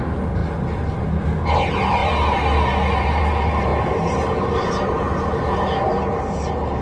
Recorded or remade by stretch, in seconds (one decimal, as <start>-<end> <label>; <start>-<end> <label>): 0.0-6.8 recorded